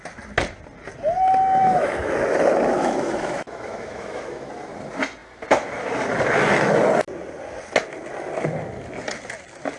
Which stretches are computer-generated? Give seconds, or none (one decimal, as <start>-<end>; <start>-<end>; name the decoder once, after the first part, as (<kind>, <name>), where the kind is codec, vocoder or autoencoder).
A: 1.6-4.5 (autoencoder, DAC-VAE)